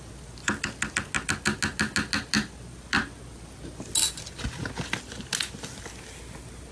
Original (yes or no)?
yes